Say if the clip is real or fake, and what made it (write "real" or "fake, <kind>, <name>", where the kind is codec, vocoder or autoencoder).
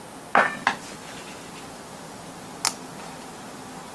real